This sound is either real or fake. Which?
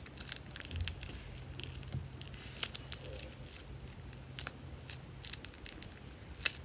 real